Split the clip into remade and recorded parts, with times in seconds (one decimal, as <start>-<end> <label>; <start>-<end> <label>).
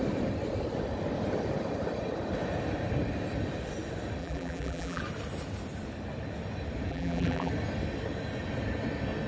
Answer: 0.0-4.2 recorded; 4.2-5.0 remade; 5.0-6.9 recorded; 6.9-7.5 remade; 7.5-9.3 recorded